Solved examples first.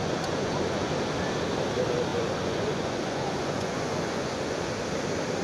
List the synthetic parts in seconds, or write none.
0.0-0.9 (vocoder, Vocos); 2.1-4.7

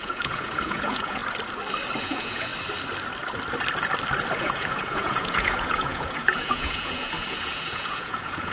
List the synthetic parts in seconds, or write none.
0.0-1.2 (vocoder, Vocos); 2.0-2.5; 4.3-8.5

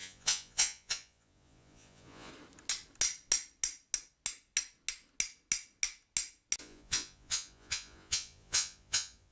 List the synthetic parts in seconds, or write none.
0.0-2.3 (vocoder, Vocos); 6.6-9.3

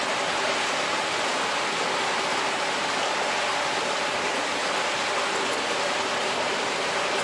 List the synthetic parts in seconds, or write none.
none

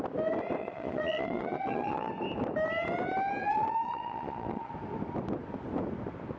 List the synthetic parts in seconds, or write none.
0.6-2.1 (vocoder, Vocos); 3.4-4.7